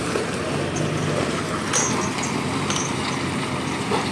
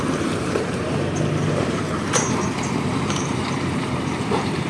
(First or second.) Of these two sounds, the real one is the first